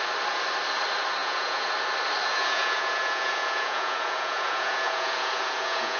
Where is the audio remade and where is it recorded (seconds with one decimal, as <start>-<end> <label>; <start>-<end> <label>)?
0.0-1.2 recorded; 1.2-1.7 remade; 1.7-2.3 recorded; 2.3-6.0 remade